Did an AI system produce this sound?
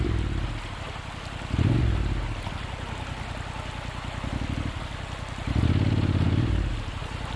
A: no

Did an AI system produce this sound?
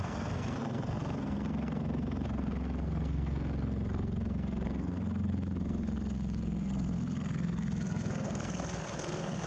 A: yes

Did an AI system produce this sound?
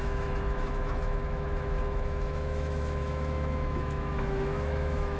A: yes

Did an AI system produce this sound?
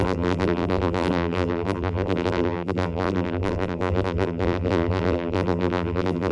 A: yes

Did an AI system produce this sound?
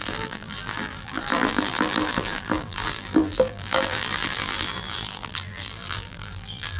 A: yes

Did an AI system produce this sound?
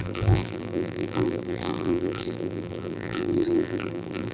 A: yes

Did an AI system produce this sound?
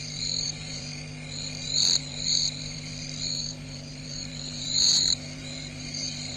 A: yes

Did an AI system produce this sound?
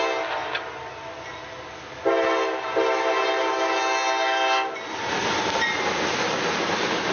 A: no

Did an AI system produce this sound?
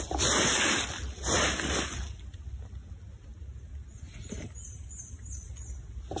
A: no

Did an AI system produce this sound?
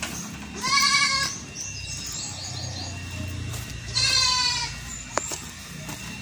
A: yes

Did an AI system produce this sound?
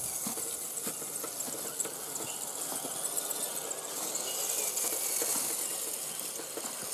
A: no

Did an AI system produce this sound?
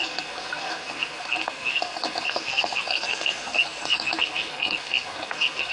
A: yes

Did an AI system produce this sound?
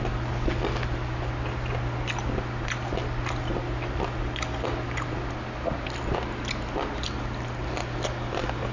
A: no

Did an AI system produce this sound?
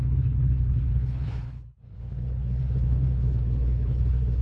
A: yes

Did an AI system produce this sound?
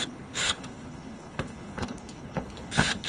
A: yes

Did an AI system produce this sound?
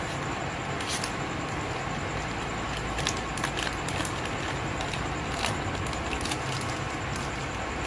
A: no